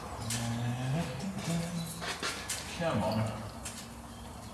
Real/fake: real